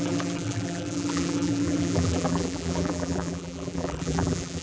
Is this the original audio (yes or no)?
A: no